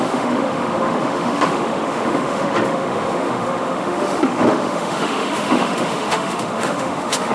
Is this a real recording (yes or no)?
no